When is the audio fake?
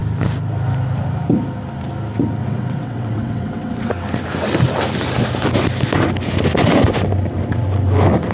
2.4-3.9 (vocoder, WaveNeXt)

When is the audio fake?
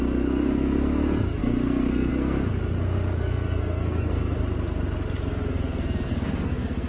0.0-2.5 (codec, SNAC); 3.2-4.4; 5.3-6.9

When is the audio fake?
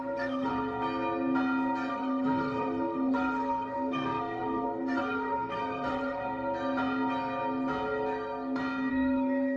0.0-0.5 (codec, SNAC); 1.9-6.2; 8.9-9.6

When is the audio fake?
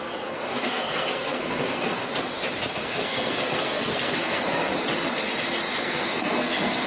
0.0-2.1 (codec, SNAC); 2.8-4.7; 5.8-6.9